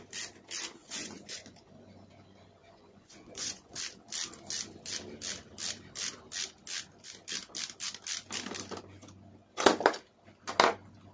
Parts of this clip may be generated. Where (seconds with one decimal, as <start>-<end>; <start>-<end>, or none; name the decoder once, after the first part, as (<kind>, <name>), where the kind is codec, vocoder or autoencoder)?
0.8-1.6 (vocoder, Vocos); 2.6-3.8